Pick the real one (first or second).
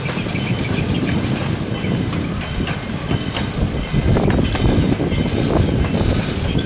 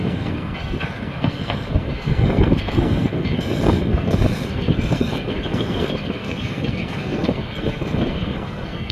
first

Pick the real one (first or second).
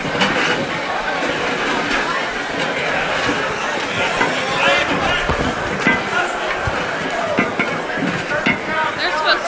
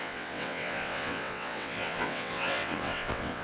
first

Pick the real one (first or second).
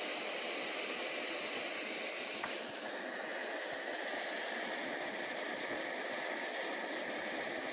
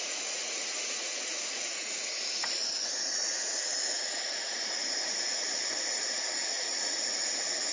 first